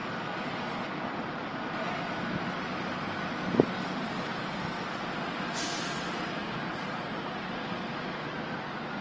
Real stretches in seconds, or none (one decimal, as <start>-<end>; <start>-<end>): 0.0-6.4; 7.5-9.0